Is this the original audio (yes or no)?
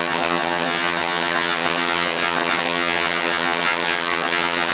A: no